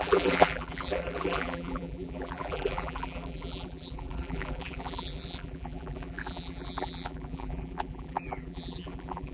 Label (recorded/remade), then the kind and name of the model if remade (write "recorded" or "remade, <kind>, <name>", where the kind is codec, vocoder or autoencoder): remade, vocoder, BigVGAN v2